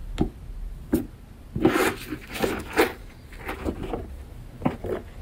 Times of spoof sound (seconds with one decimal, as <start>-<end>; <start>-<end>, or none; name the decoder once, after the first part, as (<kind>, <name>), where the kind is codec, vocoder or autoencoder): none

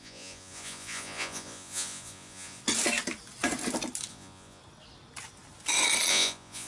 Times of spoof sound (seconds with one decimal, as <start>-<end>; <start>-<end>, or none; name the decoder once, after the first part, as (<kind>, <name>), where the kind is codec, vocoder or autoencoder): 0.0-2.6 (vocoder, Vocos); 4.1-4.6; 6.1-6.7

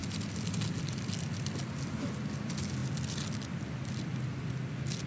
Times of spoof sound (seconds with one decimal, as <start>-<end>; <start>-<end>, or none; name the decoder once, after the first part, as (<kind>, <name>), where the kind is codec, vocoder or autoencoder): none

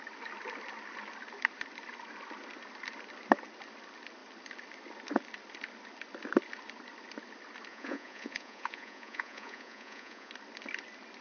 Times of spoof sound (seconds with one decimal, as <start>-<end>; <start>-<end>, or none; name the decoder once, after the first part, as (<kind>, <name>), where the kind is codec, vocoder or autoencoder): 7.7-10.3 (vocoder, Vocos)

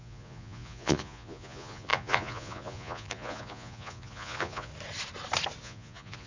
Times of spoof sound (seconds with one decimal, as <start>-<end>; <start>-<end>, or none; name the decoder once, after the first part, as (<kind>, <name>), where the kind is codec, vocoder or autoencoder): 0.0-4.7 (vocoder, Vocos); 5.6-6.3

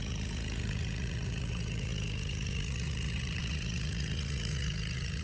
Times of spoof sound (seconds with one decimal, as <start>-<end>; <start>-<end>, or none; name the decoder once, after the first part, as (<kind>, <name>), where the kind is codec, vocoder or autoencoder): 0.0-5.2 (vocoder, Vocos)

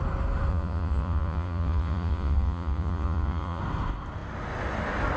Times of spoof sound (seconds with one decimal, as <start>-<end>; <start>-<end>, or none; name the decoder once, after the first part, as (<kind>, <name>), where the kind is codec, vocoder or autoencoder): 0.5-3.6 (vocoder, Vocos)